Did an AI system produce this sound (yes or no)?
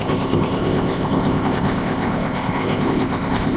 yes